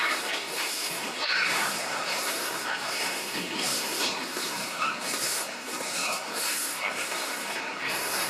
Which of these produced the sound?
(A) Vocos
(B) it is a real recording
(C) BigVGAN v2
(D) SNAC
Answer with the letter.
D